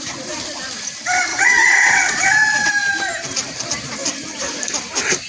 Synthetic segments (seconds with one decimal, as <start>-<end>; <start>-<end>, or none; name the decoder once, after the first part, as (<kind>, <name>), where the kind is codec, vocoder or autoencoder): 1.3-2.7 (vocoder, WaveNeXt)